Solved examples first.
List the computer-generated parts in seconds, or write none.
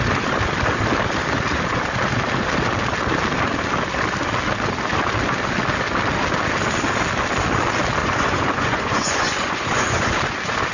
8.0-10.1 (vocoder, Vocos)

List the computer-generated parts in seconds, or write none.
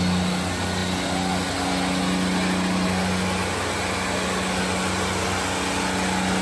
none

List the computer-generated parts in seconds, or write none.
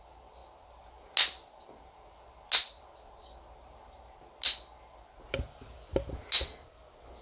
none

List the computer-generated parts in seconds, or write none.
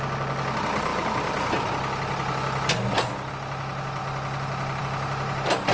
none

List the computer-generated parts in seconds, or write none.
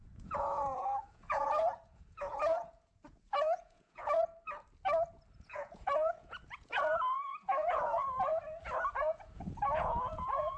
0.0-4.3 (vocoder, Vocos); 5.4-8.3; 9.0-10.6